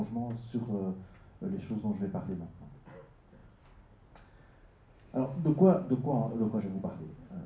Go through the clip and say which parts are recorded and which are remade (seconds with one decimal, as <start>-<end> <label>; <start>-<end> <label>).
0.0-7.5 recorded